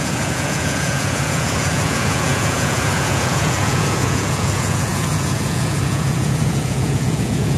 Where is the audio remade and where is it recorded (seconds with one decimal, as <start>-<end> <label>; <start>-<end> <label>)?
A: 0.0-7.6 remade